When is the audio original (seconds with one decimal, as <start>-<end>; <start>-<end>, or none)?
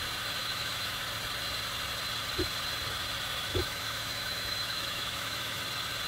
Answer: 0.0-0.4; 1.0-3.5; 5.6-6.1